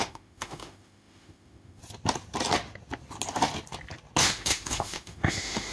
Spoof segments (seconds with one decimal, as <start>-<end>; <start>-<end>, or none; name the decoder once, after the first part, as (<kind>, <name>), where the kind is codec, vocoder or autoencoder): 0.0-1.8 (autoencoder, DAC-VAE); 4.2-5.7